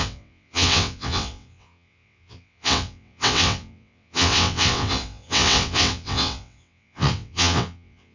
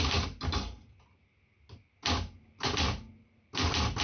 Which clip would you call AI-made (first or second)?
first